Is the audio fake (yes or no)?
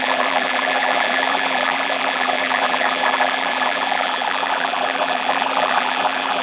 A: yes